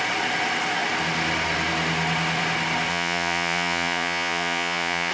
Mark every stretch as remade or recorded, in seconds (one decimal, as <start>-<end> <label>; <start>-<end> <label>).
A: 0.0-2.9 recorded; 2.9-5.1 remade

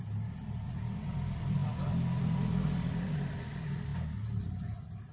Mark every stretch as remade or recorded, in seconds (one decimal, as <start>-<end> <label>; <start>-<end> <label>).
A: 0.0-5.1 recorded

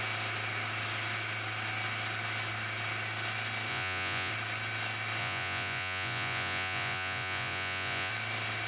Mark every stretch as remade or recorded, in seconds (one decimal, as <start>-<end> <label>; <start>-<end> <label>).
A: 0.0-3.7 recorded; 3.7-4.3 remade; 4.3-5.2 recorded; 5.2-8.1 remade; 8.1-8.7 recorded

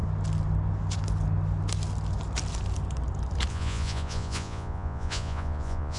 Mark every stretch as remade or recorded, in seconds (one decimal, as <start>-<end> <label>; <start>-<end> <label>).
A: 0.0-3.5 recorded; 3.5-6.0 remade

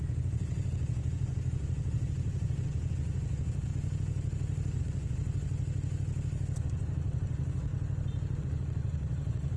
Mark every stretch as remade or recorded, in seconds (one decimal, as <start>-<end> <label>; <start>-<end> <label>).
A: 0.0-3.7 remade; 3.7-4.8 recorded; 4.8-5.5 remade; 5.5-6.6 recorded; 6.6-7.7 remade; 7.7-8.4 recorded; 8.4-9.6 remade

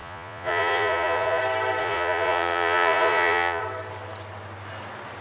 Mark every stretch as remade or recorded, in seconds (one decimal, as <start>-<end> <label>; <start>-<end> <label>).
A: 0.0-1.4 remade; 1.4-1.8 recorded; 1.8-3.6 remade; 3.6-5.2 recorded

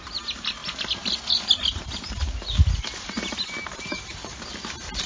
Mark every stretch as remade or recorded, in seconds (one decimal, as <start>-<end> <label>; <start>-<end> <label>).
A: 0.0-5.1 recorded

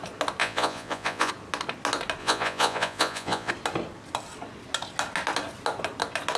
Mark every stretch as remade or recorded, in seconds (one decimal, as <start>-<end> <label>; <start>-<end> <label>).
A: 0.0-0.4 recorded; 0.4-1.3 remade; 1.3-2.2 recorded; 2.2-3.5 remade; 3.5-6.4 recorded